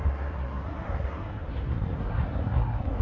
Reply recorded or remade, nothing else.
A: remade